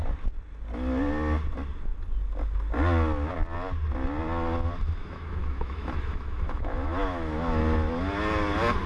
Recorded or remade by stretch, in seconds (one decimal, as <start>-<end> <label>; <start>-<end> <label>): 0.0-5.0 recorded; 5.0-7.6 remade; 7.6-8.9 recorded